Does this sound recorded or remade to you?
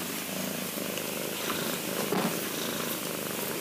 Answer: recorded